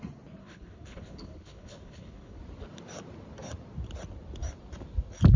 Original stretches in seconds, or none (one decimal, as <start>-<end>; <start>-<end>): 0.0-0.4; 2.4-5.4